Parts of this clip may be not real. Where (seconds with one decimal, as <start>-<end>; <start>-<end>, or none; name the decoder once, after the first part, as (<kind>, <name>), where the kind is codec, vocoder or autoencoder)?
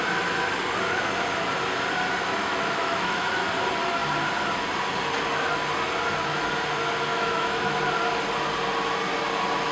2.4-3.5 (autoencoder, DAC-VAE); 7.1-7.8